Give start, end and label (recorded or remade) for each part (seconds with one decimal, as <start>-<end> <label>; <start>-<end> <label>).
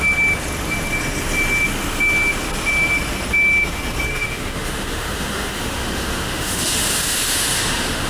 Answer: 0.0-4.1 recorded; 4.1-8.1 remade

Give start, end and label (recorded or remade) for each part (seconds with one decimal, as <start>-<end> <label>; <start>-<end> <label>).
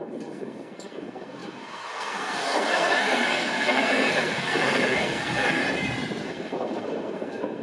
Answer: 0.0-5.6 remade; 5.6-6.2 recorded; 6.2-7.6 remade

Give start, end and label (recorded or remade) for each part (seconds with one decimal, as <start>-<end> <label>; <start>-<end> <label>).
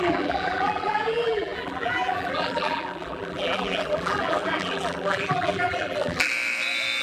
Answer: 0.0-6.3 remade; 6.3-7.0 recorded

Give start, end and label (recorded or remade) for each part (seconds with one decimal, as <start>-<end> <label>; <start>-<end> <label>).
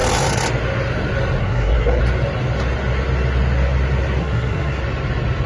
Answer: 0.0-1.4 recorded; 1.4-2.0 remade; 2.0-4.2 recorded; 4.2-4.8 remade; 4.8-5.5 recorded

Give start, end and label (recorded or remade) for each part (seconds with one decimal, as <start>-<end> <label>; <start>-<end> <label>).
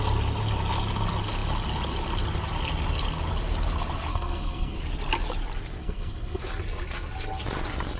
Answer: 0.0-4.1 recorded; 4.1-4.8 remade; 4.8-5.8 recorded; 5.8-6.4 remade; 6.4-8.0 recorded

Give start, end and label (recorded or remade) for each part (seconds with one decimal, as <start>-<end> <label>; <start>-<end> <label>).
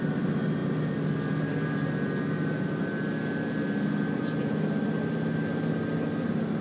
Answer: 0.0-6.6 recorded